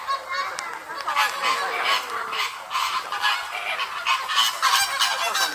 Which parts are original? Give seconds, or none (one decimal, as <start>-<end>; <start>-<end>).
0.0-5.5